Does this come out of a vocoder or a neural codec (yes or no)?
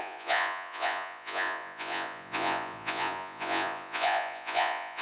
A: yes